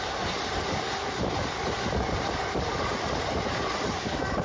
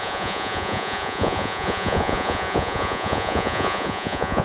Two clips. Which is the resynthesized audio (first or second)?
second